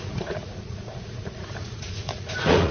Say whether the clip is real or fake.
fake